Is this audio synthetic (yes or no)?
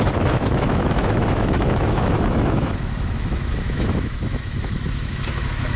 yes